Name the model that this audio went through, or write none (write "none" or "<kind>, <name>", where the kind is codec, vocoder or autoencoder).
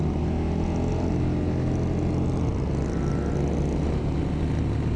none